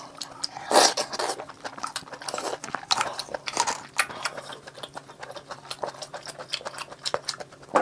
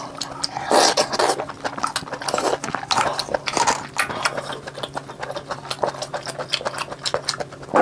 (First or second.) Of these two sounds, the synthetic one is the first